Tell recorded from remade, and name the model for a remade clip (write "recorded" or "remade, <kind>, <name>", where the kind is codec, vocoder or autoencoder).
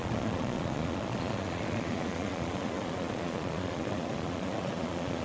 remade, vocoder, Vocos